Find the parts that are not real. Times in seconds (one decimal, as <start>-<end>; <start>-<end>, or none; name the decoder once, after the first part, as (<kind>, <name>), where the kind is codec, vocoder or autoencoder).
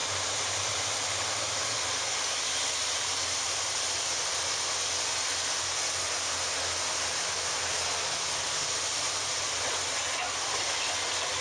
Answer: 0.0-1.6 (vocoder, BigVGAN v2); 2.8-3.7; 8.6-9.5